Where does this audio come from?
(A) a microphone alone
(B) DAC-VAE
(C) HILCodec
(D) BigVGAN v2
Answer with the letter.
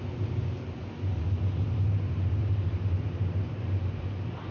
A